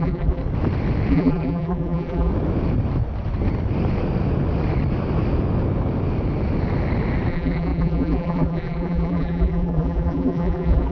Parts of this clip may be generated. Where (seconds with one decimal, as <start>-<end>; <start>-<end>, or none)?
0.0-0.4; 1.1-2.3; 7.3-10.9